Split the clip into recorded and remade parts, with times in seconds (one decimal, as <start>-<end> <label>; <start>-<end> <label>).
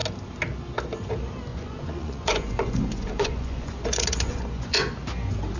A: 0.0-1.5 recorded; 1.5-4.9 remade; 4.9-5.6 recorded